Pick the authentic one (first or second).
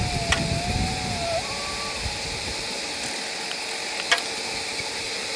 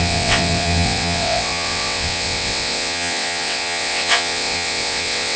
first